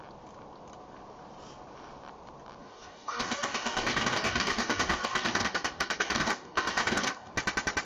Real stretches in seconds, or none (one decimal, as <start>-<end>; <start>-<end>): 0.0-2.6; 7.3-7.8